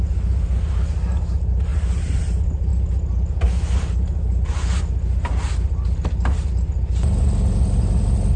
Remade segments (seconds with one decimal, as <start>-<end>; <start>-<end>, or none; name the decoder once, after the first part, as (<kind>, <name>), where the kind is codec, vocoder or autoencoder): none

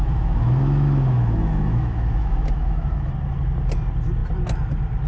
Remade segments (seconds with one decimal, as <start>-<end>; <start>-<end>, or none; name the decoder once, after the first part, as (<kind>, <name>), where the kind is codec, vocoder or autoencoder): 0.0-3.1 (autoencoder, DAC-VAE)

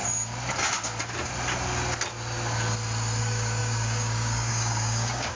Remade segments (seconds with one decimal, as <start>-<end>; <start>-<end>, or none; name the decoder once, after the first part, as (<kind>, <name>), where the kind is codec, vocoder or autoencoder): 3.2-5.4 (codec, DAC)

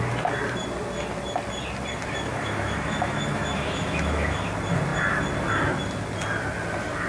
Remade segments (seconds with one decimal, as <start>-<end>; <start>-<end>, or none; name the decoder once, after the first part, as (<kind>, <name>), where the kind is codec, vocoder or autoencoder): 2.3-4.4 (autoencoder, DAC-VAE)

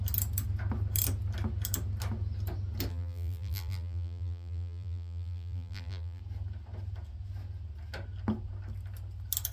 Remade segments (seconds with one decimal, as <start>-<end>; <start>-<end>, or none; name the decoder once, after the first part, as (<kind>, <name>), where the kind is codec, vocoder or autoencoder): 2.9-6.2 (vocoder, BigVGAN v2)

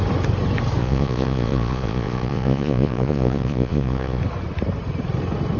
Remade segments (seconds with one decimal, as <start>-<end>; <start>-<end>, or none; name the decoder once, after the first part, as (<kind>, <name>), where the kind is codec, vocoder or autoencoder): 0.8-4.2 (vocoder, Vocos)

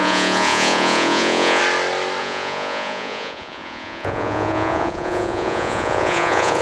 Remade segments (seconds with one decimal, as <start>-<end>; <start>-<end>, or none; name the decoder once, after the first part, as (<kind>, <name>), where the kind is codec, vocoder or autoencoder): 0.0-1.6 (vocoder, Vocos); 2.2-6.6